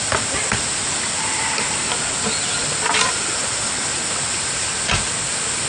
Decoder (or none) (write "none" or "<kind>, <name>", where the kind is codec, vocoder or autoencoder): none